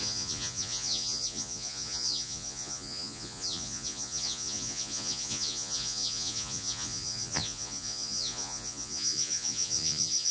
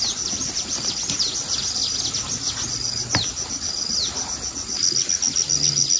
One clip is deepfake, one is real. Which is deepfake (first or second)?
first